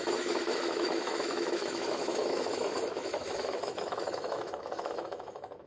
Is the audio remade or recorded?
remade